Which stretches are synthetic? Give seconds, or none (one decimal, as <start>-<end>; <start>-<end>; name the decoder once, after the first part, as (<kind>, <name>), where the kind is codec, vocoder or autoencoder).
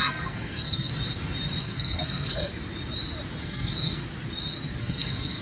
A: 0.0-0.9 (codec, SNAC); 1.6-2.5; 3.4-4.0; 4.8-5.4